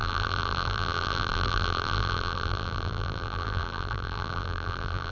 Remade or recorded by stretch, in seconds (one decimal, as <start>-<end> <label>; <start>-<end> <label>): 0.0-5.1 remade